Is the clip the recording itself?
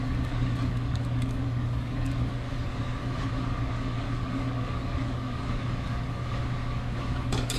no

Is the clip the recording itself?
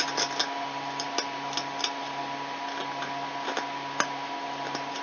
yes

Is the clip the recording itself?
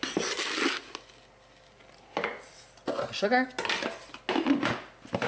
yes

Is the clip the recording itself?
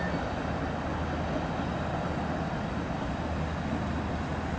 yes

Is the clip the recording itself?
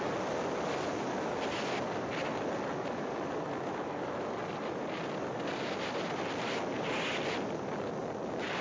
yes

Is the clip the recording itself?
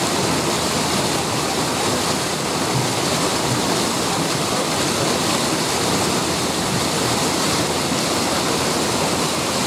yes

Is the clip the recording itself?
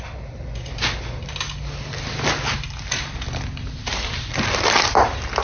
yes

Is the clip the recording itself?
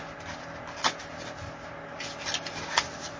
yes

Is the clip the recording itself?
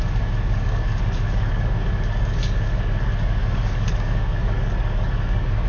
no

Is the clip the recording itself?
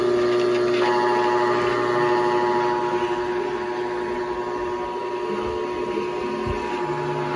yes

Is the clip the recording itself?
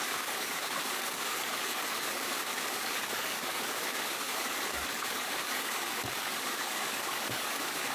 no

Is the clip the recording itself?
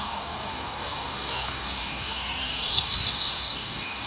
no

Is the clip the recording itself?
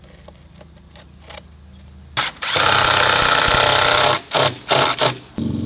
yes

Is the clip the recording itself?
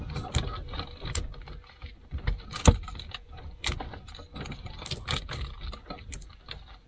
yes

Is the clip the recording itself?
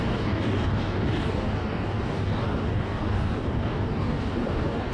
no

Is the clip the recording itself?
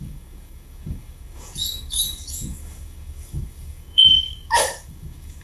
no